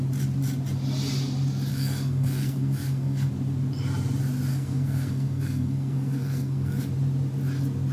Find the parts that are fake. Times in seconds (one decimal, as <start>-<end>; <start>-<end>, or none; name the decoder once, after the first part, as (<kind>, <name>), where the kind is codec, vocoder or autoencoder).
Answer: 1.7-3.3 (codec, SNAC); 4.5-6.8